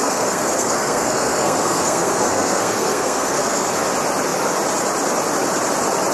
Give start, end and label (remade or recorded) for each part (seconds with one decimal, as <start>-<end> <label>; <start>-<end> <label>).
0.0-3.7 remade; 3.7-6.1 recorded